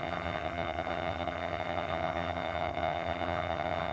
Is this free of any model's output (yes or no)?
no